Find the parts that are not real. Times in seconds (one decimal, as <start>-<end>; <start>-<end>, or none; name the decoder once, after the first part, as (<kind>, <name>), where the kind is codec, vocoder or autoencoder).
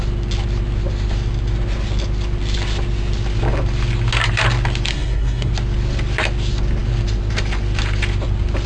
4.9-5.5 (codec, SNAC)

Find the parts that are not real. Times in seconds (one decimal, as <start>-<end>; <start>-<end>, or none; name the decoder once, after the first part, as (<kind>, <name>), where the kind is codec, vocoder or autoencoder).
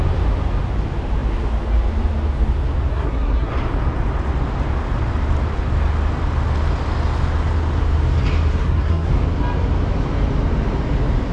2.9-3.5 (codec, SNAC); 8.5-9.1